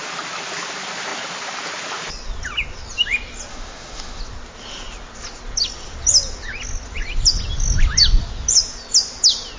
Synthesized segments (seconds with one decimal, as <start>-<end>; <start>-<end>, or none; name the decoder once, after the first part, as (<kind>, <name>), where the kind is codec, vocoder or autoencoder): 3.5-4.2 (autoencoder, DAC-VAE)